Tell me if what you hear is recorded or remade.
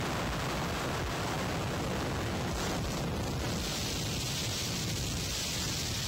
recorded